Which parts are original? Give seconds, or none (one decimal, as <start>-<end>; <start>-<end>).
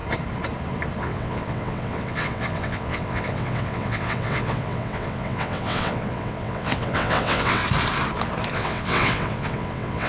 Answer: 0.0-1.0; 7.6-8.5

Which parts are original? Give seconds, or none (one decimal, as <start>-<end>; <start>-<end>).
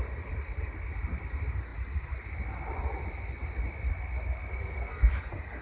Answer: 0.0-4.5; 5.1-5.6